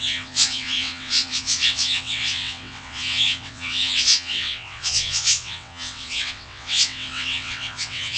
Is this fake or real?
fake